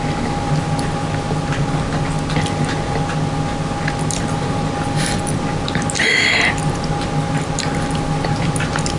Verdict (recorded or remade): recorded